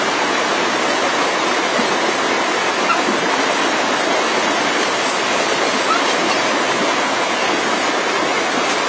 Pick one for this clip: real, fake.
real